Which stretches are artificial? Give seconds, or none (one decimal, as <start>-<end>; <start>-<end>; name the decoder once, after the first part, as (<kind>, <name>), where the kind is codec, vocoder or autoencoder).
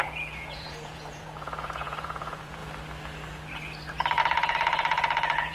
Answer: 0.0-2.6 (vocoder, Vocos); 4.2-5.5